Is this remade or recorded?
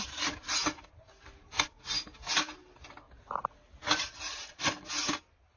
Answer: recorded